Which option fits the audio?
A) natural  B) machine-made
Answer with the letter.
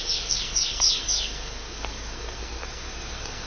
B